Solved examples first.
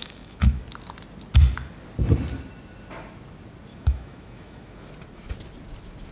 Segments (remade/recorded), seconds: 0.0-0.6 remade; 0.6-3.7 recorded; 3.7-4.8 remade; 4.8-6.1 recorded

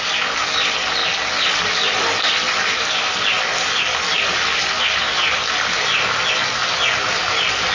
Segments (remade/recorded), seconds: 0.0-7.7 recorded

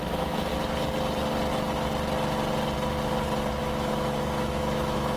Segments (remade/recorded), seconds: 0.0-0.5 remade; 0.5-3.6 recorded; 3.6-5.2 remade

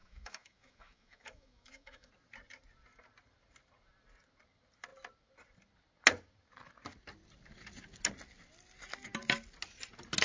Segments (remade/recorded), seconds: 0.0-2.1 remade; 2.1-10.2 recorded

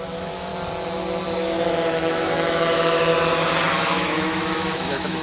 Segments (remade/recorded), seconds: 0.0-0.5 remade; 0.5-1.7 recorded; 1.7-3.1 remade; 3.1-3.8 recorded; 3.8-5.2 remade